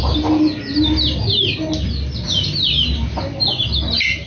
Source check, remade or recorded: recorded